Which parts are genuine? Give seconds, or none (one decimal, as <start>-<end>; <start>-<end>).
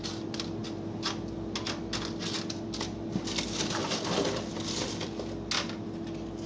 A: 0.0-6.5